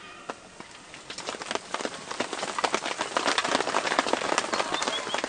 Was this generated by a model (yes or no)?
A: no